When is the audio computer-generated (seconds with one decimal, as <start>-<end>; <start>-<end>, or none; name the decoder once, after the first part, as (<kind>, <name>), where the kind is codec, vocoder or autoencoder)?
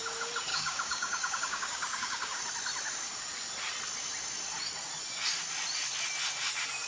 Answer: 0.5-2.4 (codec, DAC)